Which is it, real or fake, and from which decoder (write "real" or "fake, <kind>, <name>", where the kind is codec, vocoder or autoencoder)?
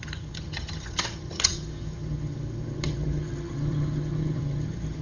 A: fake, vocoder, HiFi-GAN